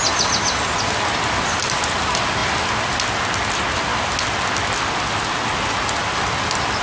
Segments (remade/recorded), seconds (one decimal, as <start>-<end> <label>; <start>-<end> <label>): 0.0-6.8 recorded